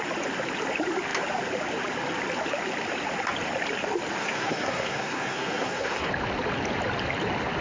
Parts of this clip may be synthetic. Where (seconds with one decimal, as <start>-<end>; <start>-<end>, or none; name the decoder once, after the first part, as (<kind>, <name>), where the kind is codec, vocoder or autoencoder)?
4.2-6.1 (codec, SNAC)